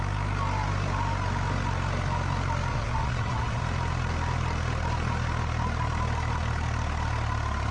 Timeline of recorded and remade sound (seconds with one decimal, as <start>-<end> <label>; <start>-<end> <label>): 0.0-2.7 recorded; 2.7-3.6 remade; 3.6-7.7 recorded